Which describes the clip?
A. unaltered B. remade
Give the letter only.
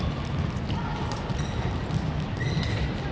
A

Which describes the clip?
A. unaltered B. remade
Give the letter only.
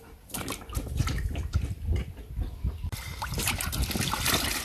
A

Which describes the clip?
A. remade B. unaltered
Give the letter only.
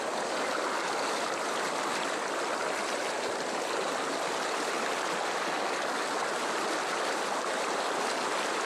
B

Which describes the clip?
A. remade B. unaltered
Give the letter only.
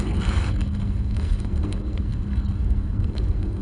A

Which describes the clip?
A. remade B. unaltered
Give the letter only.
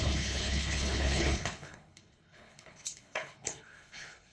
A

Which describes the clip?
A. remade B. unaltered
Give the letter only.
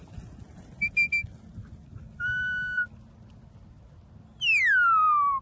B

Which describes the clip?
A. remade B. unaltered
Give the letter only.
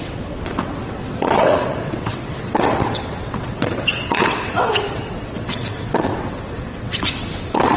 A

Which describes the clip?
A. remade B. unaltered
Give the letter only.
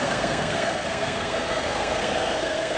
A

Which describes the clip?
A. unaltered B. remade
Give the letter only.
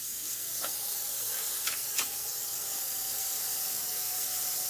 B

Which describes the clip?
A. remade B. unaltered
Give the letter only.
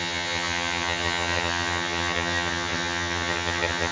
A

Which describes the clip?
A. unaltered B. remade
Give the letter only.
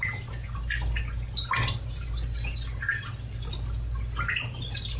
A